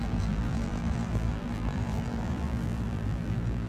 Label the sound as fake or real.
fake